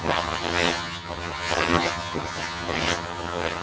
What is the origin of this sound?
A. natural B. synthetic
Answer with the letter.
B